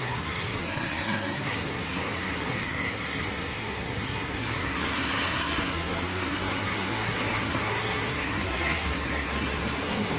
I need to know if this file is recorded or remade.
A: remade